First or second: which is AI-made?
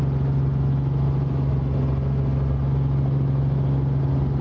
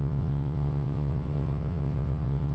second